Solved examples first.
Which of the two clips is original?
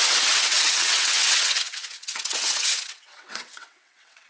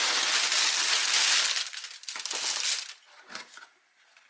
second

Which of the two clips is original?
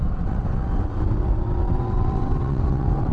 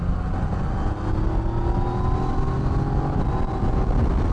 second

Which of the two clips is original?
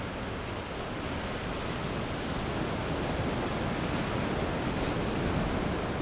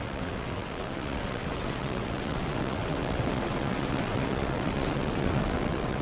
first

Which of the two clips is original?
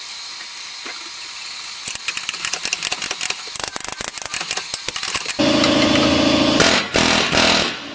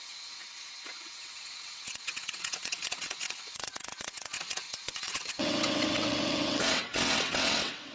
first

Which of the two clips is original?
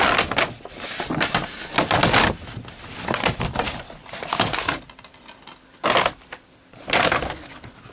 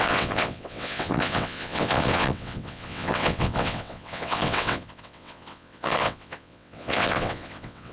first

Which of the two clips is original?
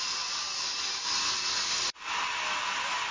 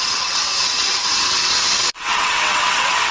first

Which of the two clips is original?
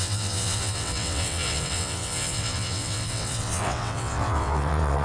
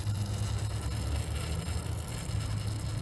second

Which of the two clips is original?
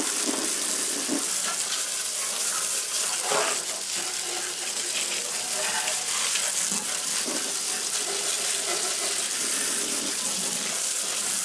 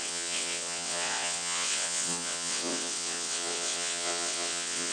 first